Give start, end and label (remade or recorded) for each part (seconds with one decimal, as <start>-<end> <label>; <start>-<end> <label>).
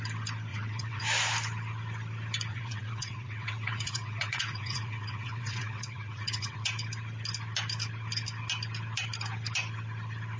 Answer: 0.0-0.5 recorded; 0.5-1.0 remade; 1.0-2.5 recorded; 2.5-6.7 remade; 6.7-10.4 recorded